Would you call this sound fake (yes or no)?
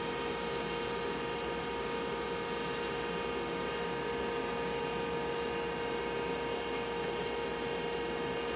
no